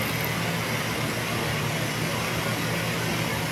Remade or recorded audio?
recorded